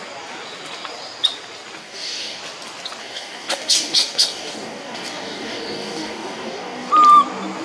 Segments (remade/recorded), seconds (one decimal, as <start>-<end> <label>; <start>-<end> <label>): 0.0-1.8 recorded; 1.8-2.4 remade; 2.4-3.0 recorded; 3.0-6.9 remade; 6.9-7.6 recorded